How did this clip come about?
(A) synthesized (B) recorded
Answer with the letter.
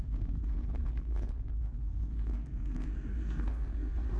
A